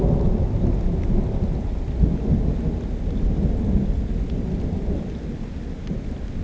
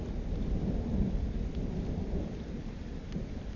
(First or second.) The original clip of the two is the first